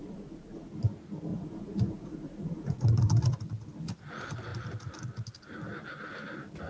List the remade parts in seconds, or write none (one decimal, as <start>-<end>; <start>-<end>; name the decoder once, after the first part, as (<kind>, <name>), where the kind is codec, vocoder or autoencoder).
0.0-0.7 (vocoder, Vocos); 1.3-3.0